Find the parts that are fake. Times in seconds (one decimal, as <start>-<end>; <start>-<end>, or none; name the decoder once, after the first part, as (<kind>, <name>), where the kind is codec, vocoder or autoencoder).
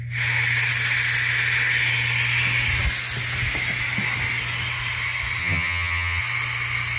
5.4-6.2 (vocoder, HiFi-GAN)